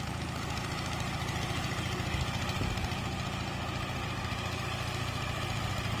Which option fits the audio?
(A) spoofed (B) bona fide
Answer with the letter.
B